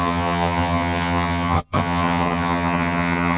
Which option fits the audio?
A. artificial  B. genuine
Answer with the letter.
A